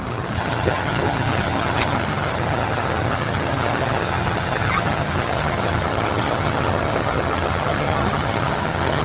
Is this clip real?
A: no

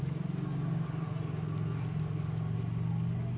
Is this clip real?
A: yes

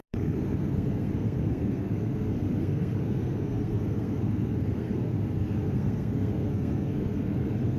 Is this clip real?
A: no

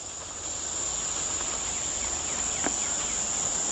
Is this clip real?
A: yes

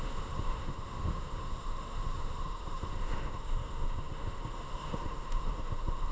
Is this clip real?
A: no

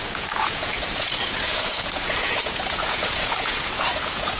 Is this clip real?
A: no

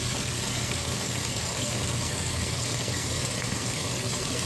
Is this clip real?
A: no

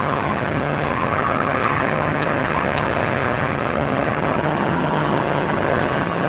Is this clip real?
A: no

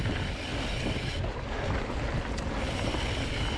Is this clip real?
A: yes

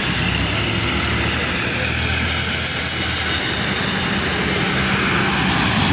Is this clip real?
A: yes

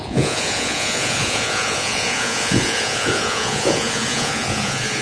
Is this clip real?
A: no